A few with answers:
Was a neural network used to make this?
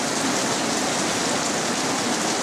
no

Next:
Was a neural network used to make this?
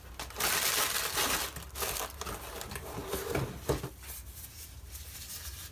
no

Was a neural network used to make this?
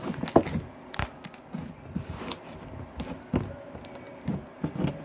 no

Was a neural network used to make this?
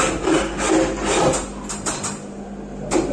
no